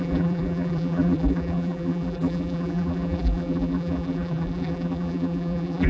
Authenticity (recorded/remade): remade